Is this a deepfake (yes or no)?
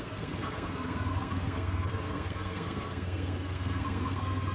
yes